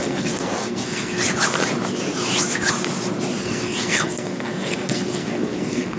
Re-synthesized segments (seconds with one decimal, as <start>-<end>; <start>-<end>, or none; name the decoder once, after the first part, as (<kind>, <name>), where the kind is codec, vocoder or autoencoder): 0.0-1.2 (codec, SNAC); 3.4-6.0